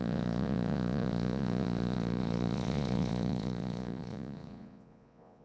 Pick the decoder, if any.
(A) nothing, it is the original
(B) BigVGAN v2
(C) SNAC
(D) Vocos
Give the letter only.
D